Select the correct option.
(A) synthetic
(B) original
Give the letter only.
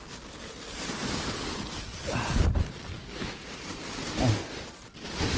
B